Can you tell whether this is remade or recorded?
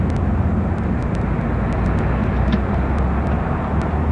recorded